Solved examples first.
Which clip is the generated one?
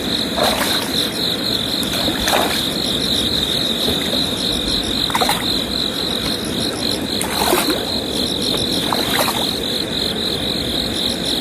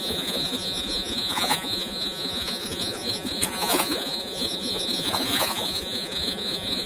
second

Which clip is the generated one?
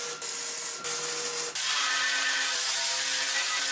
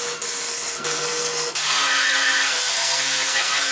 second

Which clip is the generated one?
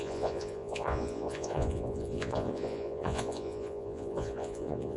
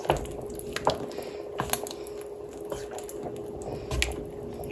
first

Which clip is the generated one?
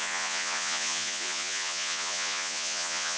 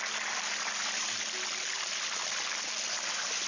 first